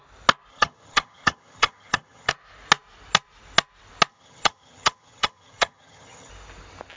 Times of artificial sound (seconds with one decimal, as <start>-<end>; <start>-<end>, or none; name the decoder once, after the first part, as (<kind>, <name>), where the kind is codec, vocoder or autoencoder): 0.5-2.3 (vocoder, HiFi-GAN); 4.1-6.3